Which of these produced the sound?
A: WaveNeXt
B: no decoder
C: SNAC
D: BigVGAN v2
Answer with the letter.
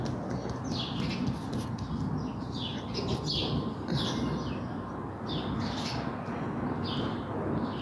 B